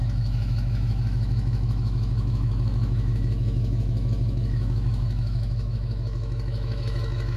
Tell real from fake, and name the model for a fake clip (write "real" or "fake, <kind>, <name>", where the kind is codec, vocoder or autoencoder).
fake, autoencoder, DAC-VAE